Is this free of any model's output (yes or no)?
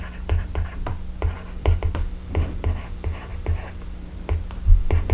yes